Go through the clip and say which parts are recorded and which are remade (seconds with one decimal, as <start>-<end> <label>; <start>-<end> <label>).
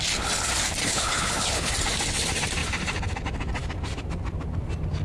0.0-0.8 recorded; 0.8-1.7 remade; 1.7-5.0 recorded